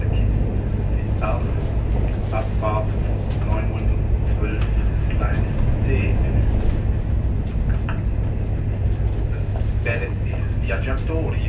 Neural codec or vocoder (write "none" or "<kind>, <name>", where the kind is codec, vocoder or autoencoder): none